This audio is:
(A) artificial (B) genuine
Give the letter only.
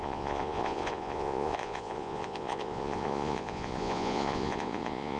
A